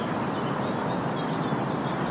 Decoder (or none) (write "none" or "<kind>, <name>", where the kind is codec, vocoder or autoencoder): vocoder, BigVGAN v2